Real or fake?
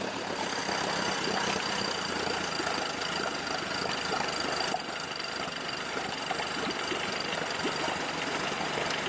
real